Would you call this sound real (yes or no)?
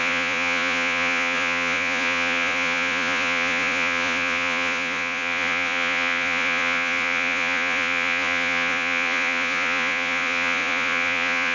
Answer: no